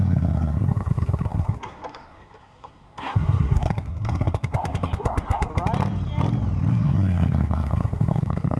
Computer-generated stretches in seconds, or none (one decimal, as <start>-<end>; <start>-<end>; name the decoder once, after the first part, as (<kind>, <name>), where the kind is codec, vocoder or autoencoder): 0.0-5.5 (codec, SNAC); 6.7-8.6